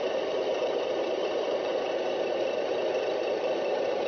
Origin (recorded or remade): remade